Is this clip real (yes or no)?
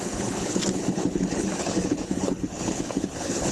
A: no